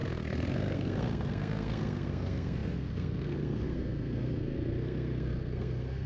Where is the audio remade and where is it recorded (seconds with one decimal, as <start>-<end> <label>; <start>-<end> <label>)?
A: 0.0-6.1 remade